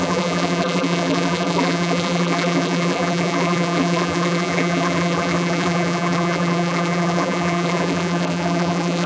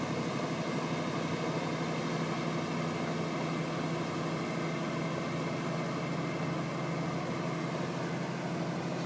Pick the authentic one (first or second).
second